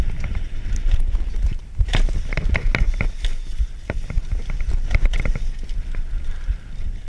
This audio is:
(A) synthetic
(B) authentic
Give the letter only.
B